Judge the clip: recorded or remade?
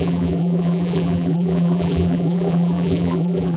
remade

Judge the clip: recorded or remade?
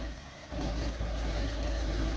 remade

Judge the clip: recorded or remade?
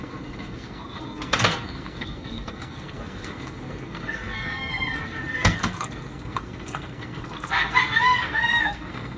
remade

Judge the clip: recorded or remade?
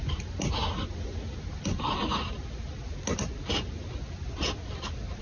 recorded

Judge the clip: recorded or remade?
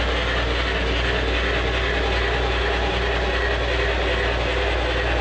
recorded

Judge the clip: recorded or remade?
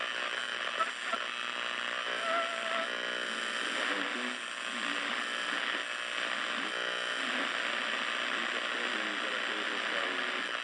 recorded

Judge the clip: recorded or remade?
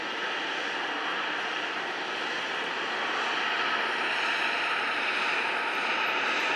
remade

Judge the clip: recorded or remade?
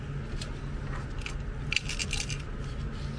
recorded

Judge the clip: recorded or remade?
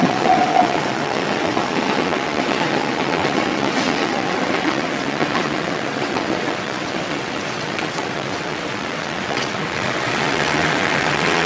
remade